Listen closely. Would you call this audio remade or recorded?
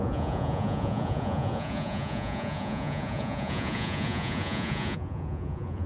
remade